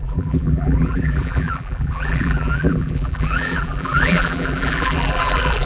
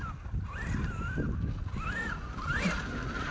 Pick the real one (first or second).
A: second